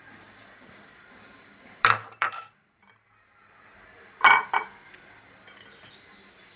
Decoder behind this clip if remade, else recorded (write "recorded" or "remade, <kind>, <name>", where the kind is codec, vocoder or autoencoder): remade, vocoder, BigVGAN v2